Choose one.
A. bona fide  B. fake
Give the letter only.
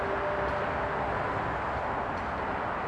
A